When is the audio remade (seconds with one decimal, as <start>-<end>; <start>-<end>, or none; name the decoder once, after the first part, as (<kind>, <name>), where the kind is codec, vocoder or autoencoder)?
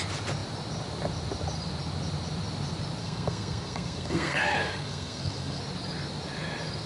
3.0-5.6 (codec, SNAC)